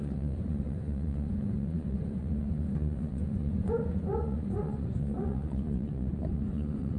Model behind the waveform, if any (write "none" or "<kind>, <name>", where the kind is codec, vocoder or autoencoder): vocoder, Vocos